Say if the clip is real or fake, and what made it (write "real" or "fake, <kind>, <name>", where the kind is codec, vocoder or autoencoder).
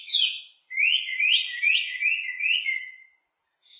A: fake, vocoder, Vocos